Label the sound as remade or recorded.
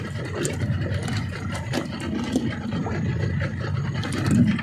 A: recorded